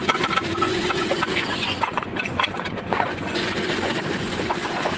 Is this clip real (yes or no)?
no